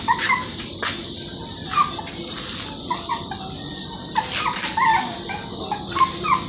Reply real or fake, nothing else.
real